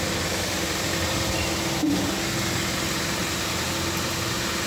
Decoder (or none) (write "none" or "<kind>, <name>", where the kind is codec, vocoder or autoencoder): none